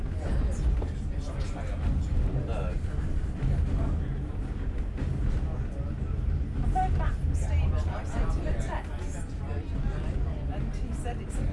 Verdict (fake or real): real